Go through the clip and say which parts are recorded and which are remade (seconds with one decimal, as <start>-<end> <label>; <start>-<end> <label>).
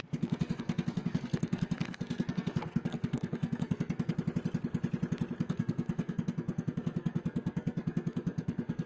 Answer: 0.0-4.1 remade; 4.1-5.4 recorded; 5.4-8.9 remade